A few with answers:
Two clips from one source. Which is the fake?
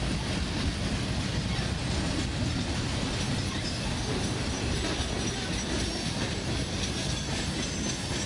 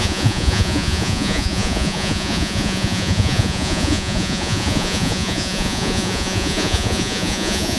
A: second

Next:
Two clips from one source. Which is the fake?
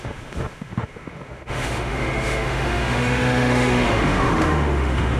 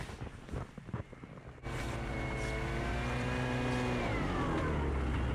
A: first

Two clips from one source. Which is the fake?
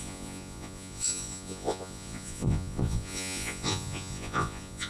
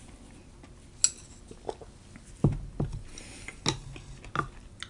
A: first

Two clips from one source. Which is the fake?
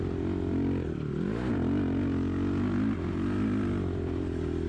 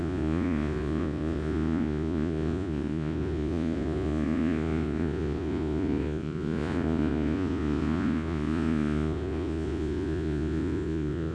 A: second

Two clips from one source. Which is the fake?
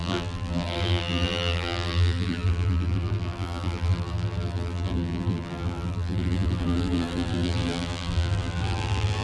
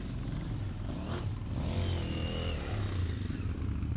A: first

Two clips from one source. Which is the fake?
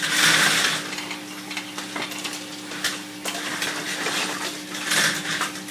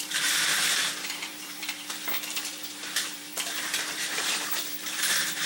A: second